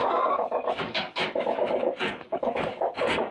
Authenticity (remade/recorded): remade